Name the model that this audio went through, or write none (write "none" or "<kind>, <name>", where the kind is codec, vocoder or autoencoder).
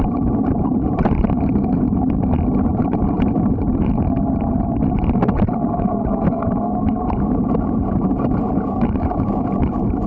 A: vocoder, BigVGAN v2